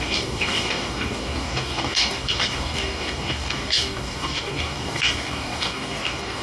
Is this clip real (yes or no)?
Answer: no